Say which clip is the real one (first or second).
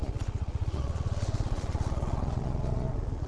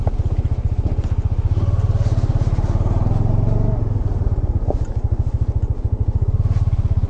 second